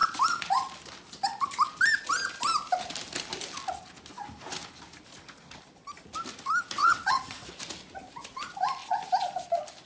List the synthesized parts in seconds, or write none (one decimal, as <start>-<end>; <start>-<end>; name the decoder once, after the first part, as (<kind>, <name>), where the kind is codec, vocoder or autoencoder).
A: 6.8-7.5 (vocoder, WaveNeXt)